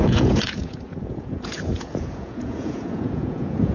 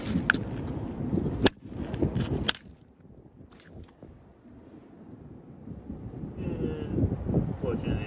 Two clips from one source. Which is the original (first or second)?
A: second